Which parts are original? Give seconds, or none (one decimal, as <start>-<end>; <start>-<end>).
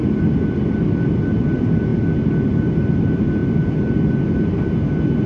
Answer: 0.9-3.4; 4.0-5.3